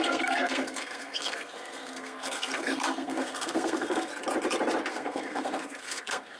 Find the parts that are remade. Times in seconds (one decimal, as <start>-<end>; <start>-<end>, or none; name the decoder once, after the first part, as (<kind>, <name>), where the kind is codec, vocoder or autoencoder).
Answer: 0.0-4.1 (codec, SNAC); 4.9-6.4